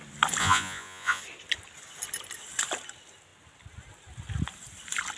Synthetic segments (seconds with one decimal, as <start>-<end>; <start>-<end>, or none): 0.4-1.2